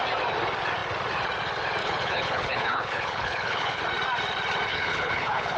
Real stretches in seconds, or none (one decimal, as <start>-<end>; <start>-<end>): 0.0-1.8; 3.8-4.7